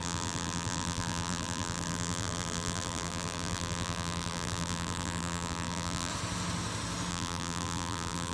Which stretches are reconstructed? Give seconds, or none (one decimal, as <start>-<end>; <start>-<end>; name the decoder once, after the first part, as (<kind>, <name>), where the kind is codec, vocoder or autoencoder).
0.0-6.1 (vocoder, BigVGAN v2); 7.1-8.3